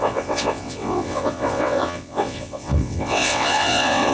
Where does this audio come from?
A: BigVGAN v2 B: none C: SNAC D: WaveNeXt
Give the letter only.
D